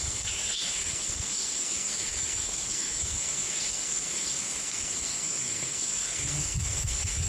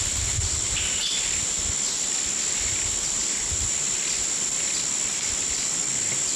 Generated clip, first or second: first